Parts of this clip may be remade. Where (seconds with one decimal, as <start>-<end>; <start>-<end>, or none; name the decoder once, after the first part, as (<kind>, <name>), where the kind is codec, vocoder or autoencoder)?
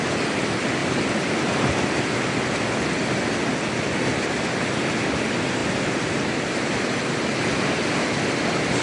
none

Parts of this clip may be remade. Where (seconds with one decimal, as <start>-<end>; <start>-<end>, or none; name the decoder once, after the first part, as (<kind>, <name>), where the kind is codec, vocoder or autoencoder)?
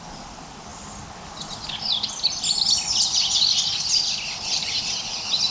none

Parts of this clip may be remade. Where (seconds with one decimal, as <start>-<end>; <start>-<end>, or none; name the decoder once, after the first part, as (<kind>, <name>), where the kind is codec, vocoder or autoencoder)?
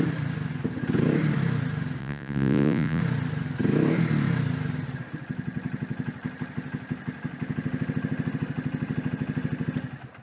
2.0-3.0 (vocoder, Vocos)